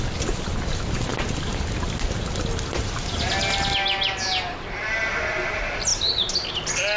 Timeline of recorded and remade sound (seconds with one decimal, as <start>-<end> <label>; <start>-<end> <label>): 0.0-7.0 recorded